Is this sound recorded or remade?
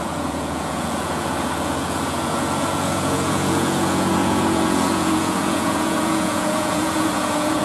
remade